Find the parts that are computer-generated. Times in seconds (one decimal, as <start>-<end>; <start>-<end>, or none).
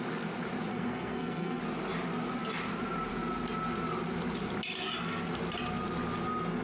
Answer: 0.7-1.6